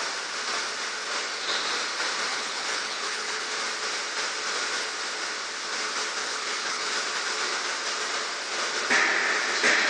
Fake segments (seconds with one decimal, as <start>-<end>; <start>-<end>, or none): 2.3-3.4; 6.2-6.9